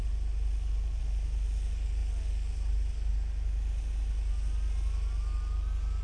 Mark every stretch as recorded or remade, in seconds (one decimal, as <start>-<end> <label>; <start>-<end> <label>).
0.0-6.0 recorded